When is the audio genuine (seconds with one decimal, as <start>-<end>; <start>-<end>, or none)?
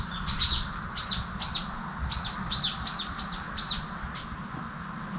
0.0-5.2